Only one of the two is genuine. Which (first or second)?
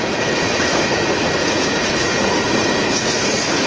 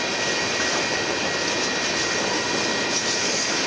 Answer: second